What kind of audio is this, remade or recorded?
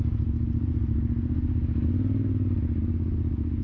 recorded